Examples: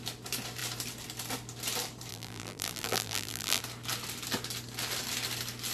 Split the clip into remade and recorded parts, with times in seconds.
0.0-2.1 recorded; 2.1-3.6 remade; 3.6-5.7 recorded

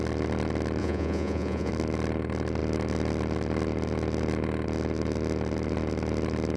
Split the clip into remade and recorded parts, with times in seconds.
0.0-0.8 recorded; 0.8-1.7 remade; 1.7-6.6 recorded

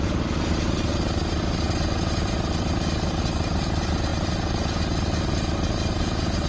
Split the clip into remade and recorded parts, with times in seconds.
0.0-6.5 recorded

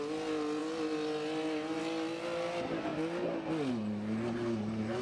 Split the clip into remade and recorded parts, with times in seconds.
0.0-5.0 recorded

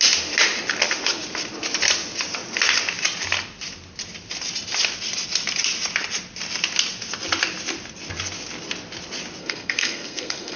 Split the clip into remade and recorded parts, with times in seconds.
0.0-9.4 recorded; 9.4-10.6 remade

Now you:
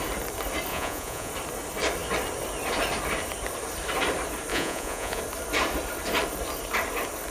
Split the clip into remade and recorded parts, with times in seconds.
0.0-0.7 recorded; 0.7-1.3 remade; 1.3-4.5 recorded; 4.5-5.2 remade; 5.2-7.3 recorded

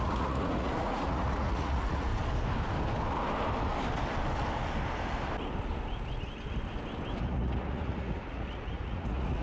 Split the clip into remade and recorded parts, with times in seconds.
0.0-2.1 remade; 2.1-7.2 recorded; 7.2-9.4 remade